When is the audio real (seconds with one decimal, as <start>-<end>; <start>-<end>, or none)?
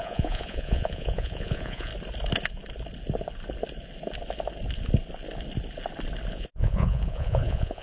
1.9-6.3